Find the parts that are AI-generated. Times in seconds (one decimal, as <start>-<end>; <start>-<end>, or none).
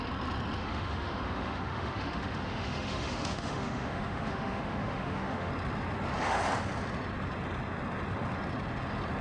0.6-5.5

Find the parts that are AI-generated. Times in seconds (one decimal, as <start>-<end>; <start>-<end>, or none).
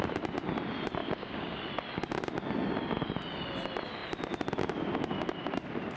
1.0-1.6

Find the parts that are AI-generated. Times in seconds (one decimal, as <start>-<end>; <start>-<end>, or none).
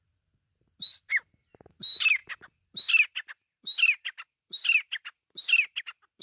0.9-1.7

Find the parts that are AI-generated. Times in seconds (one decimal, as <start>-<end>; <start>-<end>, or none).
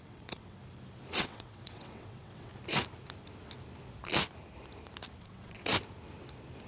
0.0-0.6; 1.1-2.5; 5.2-5.7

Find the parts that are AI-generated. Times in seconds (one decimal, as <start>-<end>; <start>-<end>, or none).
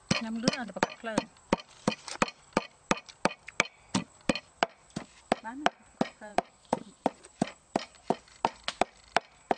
6.3-6.9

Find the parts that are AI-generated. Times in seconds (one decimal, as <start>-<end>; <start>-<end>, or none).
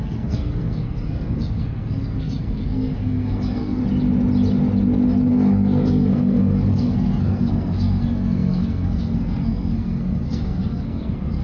0.0-3.8; 5.3-11.4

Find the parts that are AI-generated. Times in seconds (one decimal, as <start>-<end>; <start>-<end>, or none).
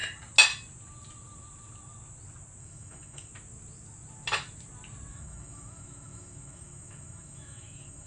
2.6-3.3; 5.1-8.1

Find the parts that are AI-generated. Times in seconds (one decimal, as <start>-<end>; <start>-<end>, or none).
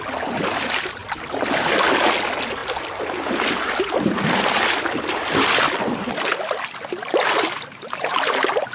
none